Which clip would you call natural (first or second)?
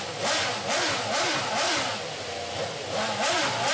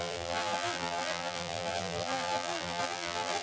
first